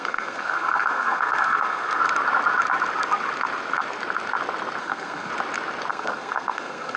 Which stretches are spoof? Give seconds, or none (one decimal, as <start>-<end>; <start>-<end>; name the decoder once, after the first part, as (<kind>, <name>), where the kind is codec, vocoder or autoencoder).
0.0-2.0 (codec, SNAC); 4.8-5.3; 5.9-7.0